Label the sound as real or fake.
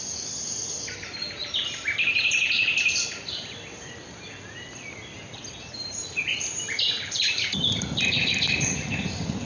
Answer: real